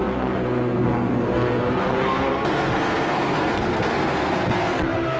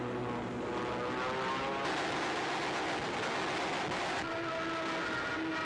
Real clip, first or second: second